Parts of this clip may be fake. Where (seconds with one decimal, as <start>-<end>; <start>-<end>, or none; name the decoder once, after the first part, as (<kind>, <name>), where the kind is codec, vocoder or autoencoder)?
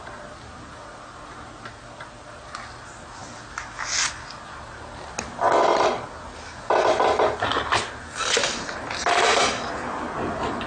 none